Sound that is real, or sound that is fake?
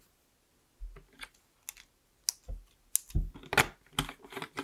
real